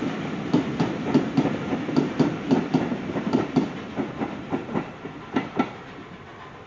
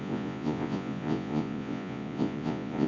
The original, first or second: first